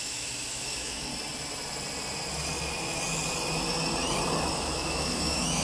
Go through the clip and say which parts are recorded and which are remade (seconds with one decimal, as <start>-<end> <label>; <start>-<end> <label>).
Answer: 0.0-1.1 remade; 1.1-4.5 recorded; 4.5-5.6 remade